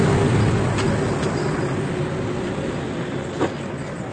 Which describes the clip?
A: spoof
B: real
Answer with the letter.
B